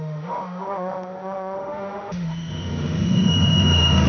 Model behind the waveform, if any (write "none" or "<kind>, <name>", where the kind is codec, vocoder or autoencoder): autoencoder, DAC-VAE